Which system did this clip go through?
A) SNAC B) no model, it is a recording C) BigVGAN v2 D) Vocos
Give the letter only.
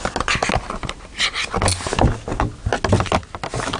B